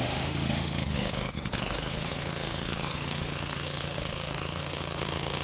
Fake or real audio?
fake